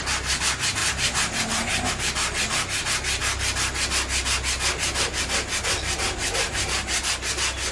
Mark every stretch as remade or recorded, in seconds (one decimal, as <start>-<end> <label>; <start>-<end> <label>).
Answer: 0.0-7.7 recorded